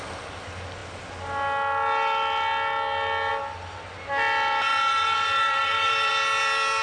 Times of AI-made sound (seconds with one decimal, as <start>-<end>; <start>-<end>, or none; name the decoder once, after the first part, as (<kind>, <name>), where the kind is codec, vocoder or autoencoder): 4.7-6.1 (vocoder, BigVGAN v2)

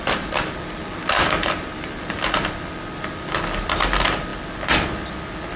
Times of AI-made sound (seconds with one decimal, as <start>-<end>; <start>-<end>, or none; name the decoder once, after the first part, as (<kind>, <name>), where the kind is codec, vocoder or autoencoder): none

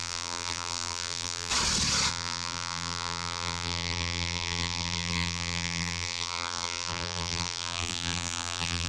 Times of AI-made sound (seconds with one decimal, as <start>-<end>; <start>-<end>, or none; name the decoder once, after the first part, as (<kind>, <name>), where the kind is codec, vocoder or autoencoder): 0.0-1.5 (vocoder, BigVGAN v2); 2.1-8.9

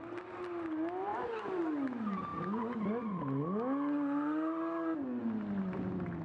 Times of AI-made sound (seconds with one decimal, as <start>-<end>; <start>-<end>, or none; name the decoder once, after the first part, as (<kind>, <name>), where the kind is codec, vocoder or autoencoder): 1.1-1.6 (vocoder, BigVGAN v2)

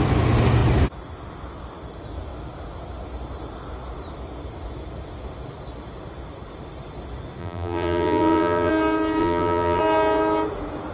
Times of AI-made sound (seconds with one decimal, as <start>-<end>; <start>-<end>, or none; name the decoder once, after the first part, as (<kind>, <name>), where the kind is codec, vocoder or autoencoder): 7.4-8.7 (vocoder, BigVGAN v2); 9.2-9.8

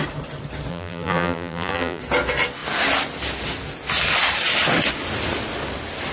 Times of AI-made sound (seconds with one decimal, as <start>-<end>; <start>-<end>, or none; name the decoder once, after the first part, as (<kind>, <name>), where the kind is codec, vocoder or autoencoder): 0.7-2.0 (vocoder, BigVGAN v2)

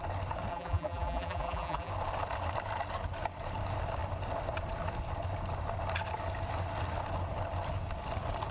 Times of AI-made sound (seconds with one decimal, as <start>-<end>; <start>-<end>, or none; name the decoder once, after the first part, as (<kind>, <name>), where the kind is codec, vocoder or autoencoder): 0.5-1.9 (vocoder, BigVGAN v2)

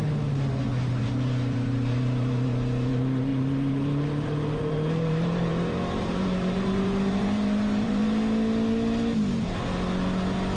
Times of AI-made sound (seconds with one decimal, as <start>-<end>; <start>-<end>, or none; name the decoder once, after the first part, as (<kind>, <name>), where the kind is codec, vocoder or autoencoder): 3.3-8.0 (vocoder, BigVGAN v2)